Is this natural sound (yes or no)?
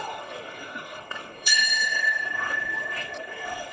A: no